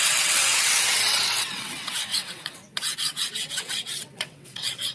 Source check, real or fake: fake